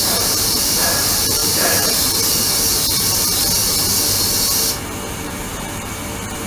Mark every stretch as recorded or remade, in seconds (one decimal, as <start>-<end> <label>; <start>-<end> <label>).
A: 0.0-3.6 remade; 3.6-5.1 recorded; 5.1-6.5 remade